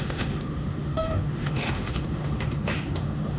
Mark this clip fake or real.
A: fake